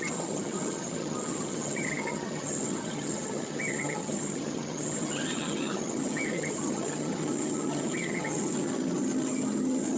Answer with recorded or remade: remade